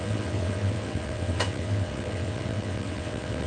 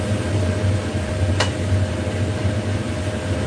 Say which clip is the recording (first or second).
second